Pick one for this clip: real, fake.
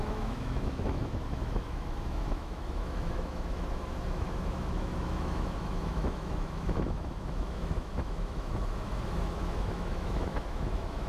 fake